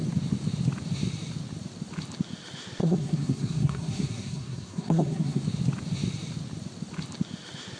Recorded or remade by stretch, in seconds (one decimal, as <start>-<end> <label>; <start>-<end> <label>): 0.0-2.8 recorded; 2.8-5.4 remade; 5.4-7.8 recorded